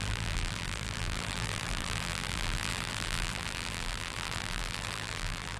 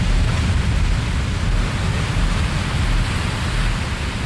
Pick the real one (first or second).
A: second